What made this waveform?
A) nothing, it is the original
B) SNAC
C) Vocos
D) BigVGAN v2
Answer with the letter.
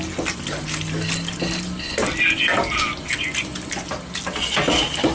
A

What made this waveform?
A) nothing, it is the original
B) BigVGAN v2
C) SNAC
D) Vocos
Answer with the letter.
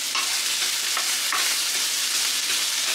A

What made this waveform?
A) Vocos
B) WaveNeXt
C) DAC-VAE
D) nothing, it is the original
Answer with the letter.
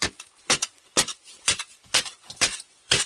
A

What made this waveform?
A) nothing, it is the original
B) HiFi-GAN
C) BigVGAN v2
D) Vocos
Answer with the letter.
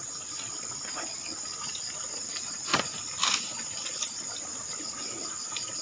A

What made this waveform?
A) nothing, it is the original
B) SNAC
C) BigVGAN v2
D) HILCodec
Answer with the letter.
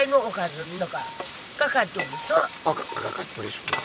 C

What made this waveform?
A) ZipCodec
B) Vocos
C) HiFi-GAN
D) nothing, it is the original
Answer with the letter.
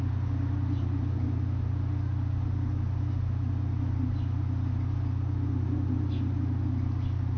D